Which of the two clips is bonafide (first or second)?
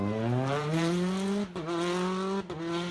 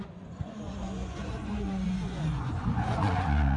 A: first